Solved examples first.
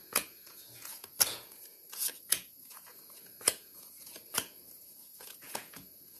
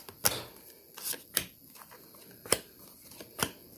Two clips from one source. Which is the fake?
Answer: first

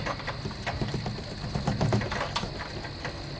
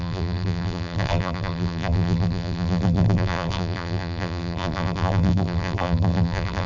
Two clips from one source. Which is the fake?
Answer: second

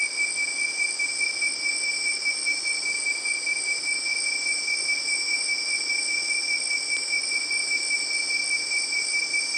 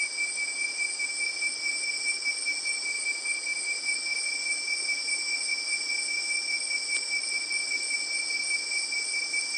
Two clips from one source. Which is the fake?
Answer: second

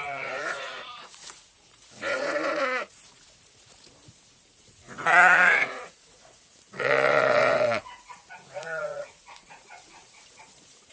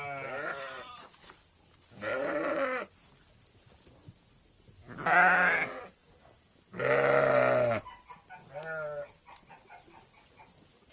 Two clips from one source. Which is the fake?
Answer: first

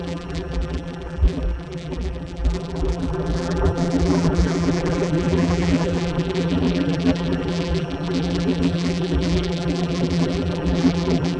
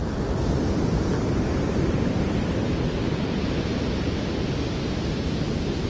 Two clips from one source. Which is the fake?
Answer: first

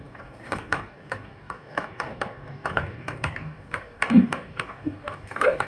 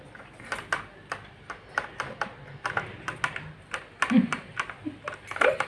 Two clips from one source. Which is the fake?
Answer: first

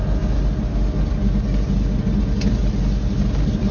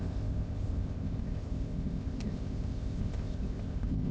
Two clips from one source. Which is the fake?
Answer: second